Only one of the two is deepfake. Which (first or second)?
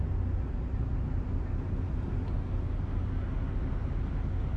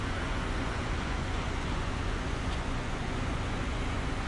second